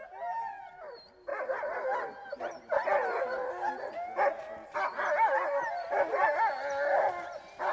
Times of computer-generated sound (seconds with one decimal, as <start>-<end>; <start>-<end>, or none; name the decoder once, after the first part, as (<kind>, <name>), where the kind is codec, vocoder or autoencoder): none